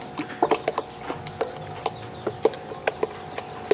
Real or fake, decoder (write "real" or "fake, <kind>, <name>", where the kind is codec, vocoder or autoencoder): real